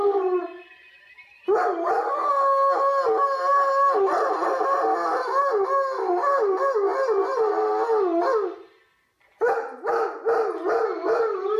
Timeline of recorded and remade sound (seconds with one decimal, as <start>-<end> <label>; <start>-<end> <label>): 0.0-6.9 recorded; 6.9-7.7 remade; 7.7-11.6 recorded